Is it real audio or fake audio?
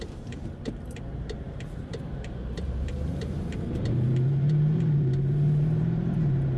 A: fake